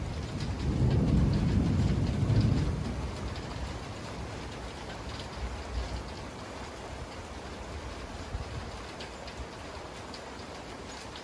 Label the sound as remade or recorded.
recorded